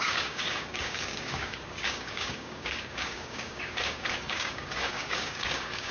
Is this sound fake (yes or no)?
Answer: yes